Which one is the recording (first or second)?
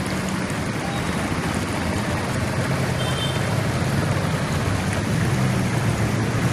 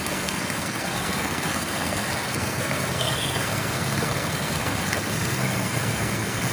first